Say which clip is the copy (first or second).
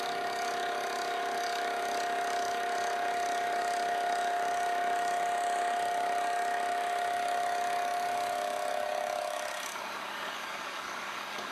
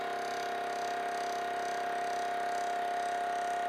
first